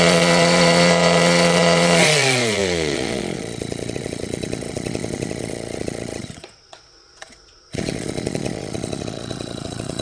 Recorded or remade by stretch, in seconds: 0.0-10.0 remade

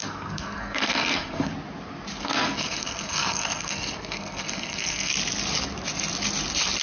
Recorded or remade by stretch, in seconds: 0.0-1.5 remade; 1.5-2.2 recorded; 2.2-5.1 remade; 5.1-6.8 recorded

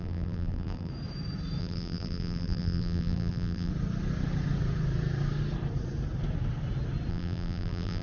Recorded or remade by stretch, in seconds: 0.0-0.9 remade; 0.9-1.6 recorded; 1.6-3.7 remade; 3.7-7.1 recorded; 7.1-8.0 remade

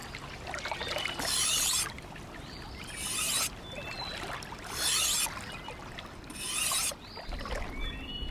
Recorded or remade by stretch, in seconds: 0.0-3.6 remade; 3.6-8.3 recorded

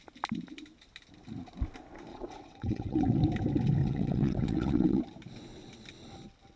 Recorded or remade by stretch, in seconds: 0.0-2.1 recorded; 2.1-3.2 remade; 3.2-3.8 recorded; 3.8-5.0 remade; 5.0-6.6 recorded

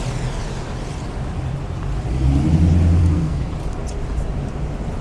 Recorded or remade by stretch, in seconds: 0.0-3.0 recorded; 3.0-3.5 remade; 3.5-5.0 recorded